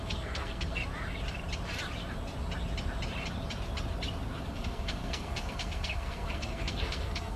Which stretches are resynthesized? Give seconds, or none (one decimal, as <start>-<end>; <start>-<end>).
0.0-0.8; 4.5-7.4

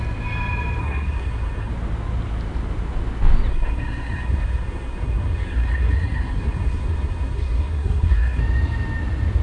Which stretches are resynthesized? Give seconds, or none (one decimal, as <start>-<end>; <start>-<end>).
0.8-1.7; 3.5-8.4

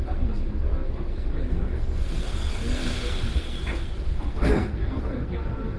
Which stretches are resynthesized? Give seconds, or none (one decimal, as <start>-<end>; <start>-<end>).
0.0-5.8